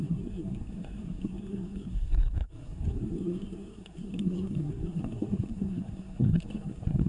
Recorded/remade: remade